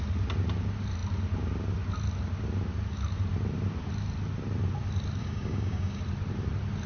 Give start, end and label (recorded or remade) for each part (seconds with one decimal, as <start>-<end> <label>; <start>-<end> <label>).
0.0-5.2 recorded; 5.2-6.0 remade; 6.0-6.9 recorded

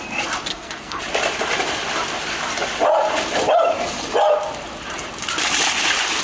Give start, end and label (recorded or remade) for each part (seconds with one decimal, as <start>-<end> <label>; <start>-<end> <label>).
0.0-0.5 recorded; 0.5-1.0 remade; 1.0-6.2 recorded

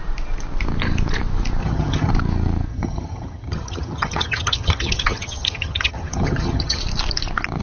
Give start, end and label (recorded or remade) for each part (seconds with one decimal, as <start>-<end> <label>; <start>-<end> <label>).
0.0-1.6 recorded; 1.6-2.1 remade; 2.1-2.7 recorded; 2.7-6.8 remade; 6.8-7.6 recorded